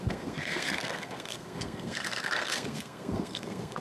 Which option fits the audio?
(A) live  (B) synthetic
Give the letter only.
B